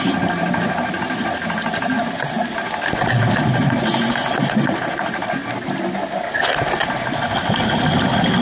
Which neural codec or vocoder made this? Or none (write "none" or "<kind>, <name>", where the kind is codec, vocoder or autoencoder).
none